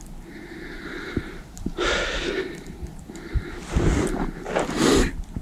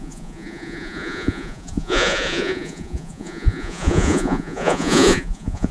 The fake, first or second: second